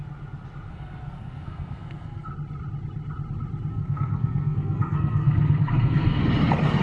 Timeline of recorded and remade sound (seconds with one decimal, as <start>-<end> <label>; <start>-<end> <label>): 0.0-0.7 recorded; 0.7-2.3 remade; 2.3-3.7 recorded; 3.7-6.2 remade; 6.2-6.8 recorded